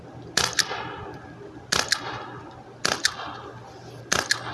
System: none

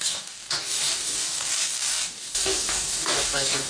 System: codec, DAC